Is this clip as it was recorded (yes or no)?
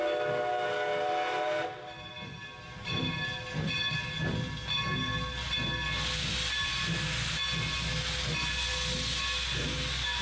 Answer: yes